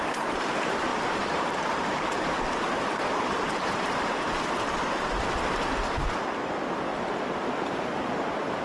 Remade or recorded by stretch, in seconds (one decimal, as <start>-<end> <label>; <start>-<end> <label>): 0.0-0.9 recorded; 0.9-4.8 remade; 4.8-6.9 recorded; 6.9-8.6 remade